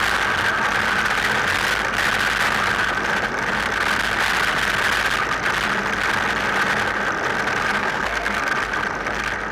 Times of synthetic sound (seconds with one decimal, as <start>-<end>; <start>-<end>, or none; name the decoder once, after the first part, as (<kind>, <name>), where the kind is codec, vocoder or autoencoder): 7.8-8.4 (codec, SNAC)